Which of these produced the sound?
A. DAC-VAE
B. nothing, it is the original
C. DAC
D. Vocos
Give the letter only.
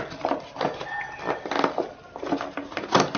B